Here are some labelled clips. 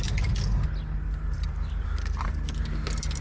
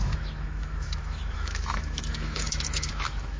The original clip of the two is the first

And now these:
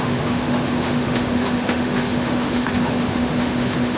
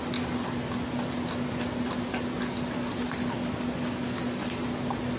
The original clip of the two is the second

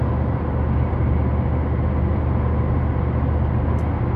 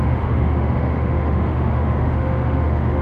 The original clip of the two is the first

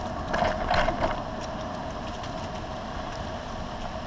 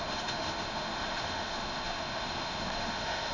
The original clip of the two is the first